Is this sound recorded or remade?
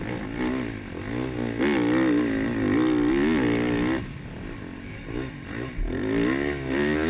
recorded